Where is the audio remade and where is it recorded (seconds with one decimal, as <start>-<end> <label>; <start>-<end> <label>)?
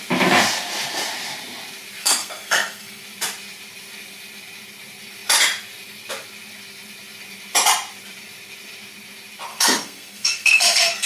0.0-2.0 recorded; 2.0-3.0 remade; 3.0-9.5 recorded; 9.5-11.1 remade